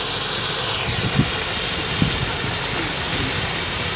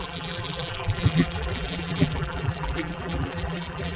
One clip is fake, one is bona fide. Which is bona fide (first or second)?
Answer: first